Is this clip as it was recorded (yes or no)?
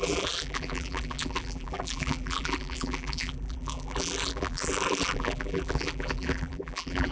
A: no